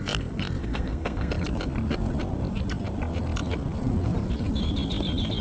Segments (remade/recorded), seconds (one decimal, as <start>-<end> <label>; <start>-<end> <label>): 0.0-0.6 recorded; 0.6-1.3 remade; 1.3-5.4 recorded